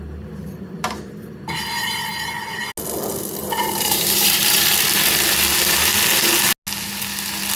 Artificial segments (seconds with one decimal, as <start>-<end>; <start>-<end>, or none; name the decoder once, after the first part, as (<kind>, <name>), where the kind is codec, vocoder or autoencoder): 3.4-4.6 (vocoder, BigVGAN v2)